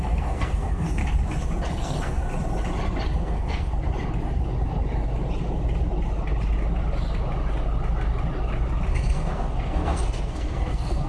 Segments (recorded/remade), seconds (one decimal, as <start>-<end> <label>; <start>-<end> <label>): 0.0-1.0 remade; 1.0-1.7 recorded; 1.7-2.2 remade; 2.2-3.2 recorded; 3.2-3.7 remade; 3.7-8.9 recorded; 8.9-11.1 remade